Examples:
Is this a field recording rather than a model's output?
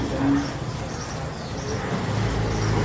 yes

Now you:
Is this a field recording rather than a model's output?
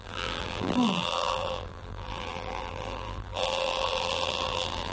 no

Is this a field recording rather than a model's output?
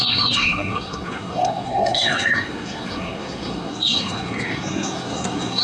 no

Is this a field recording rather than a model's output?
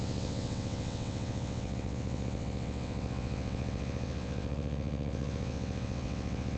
no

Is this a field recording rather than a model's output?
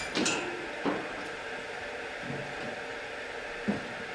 no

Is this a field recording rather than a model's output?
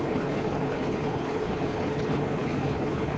no